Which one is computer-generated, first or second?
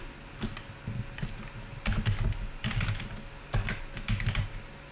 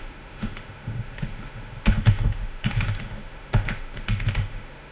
second